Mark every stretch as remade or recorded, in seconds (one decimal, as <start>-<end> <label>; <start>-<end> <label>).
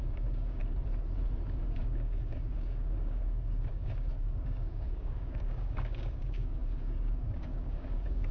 0.0-0.6 remade; 0.6-1.4 recorded; 1.4-8.3 remade